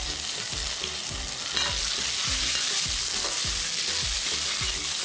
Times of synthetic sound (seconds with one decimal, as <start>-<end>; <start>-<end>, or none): none